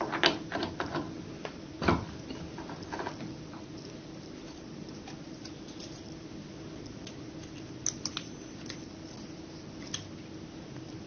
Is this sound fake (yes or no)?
no